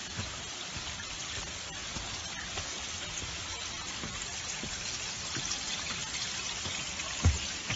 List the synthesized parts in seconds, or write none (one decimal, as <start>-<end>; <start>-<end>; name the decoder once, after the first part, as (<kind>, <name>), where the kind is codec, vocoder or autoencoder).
6.0-7.0 (vocoder, BigVGAN v2)